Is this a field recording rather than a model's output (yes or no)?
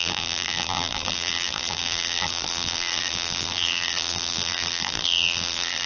no